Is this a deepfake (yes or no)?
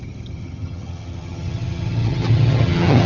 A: yes